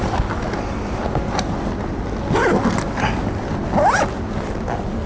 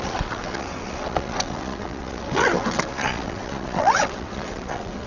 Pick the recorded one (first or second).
first